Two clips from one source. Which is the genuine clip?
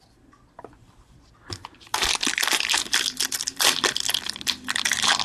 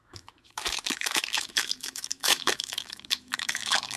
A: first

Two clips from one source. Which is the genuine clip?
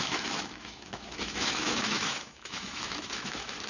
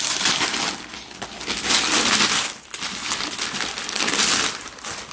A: second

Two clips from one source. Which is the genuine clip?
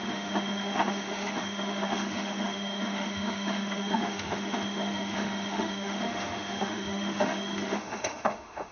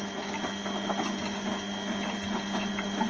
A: second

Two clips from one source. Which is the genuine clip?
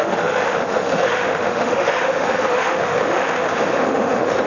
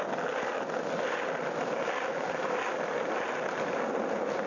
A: second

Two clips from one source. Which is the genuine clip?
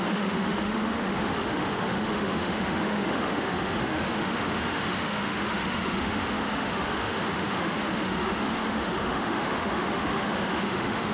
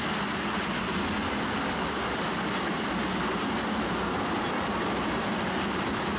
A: second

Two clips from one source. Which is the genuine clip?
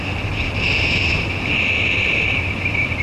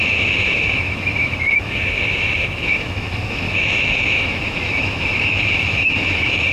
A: first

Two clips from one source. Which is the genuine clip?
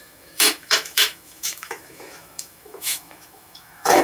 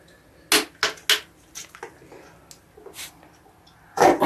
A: second